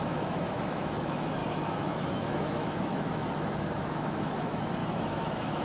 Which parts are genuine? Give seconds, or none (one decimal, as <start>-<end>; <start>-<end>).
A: none